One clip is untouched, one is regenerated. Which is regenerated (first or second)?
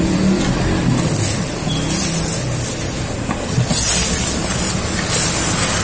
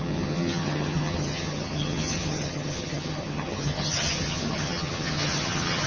second